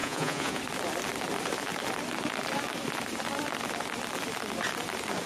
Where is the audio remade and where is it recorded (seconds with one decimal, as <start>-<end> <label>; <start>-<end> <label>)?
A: 0.0-0.6 remade; 0.6-5.3 recorded